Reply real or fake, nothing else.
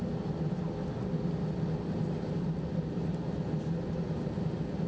real